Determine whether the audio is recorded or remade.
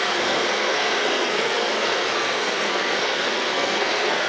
remade